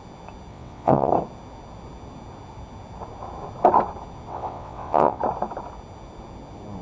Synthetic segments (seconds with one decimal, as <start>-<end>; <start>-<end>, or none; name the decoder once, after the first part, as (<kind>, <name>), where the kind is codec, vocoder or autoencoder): 0.5-1.1 (vocoder, WaveNeXt); 4.3-5.2